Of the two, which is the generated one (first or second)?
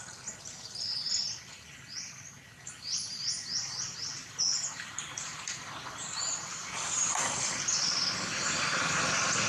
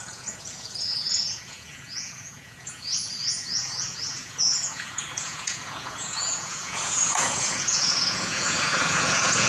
second